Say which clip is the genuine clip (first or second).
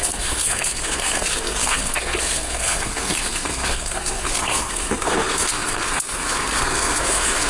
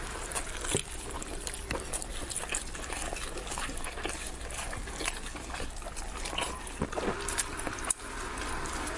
second